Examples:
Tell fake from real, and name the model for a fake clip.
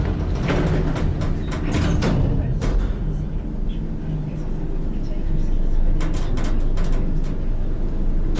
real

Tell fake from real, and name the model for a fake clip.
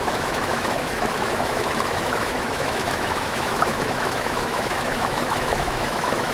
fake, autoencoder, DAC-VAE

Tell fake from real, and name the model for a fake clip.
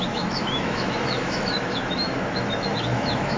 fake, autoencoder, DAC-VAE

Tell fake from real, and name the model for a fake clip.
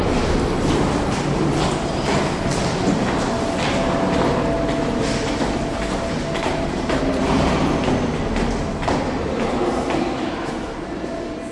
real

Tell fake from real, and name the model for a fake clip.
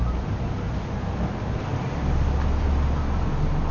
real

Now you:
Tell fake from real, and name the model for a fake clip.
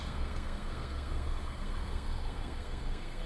fake, codec, SNAC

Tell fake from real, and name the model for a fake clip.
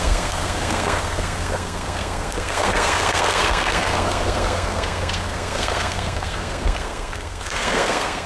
fake, codec, SNAC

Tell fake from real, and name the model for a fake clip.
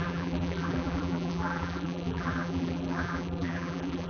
fake, vocoder, BigVGAN v2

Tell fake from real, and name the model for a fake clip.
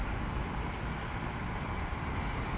real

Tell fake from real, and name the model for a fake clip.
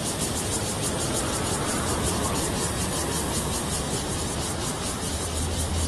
fake, vocoder, BigVGAN v2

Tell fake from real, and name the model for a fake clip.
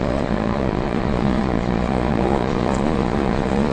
fake, vocoder, Vocos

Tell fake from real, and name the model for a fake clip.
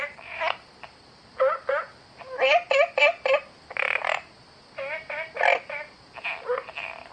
real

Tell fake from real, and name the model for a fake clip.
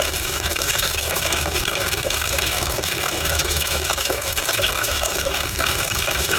fake, codec, DAC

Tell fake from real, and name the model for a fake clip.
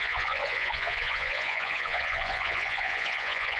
fake, vocoder, Vocos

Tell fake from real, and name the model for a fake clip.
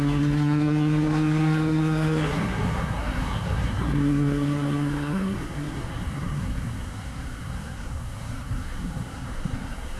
fake, codec, SNAC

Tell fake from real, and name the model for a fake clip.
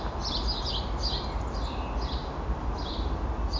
real